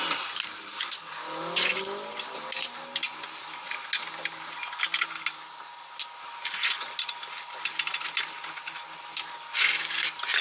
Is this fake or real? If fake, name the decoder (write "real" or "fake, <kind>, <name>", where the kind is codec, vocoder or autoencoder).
real